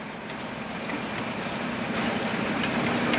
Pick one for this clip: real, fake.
real